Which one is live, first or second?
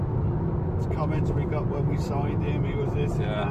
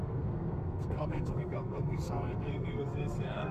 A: first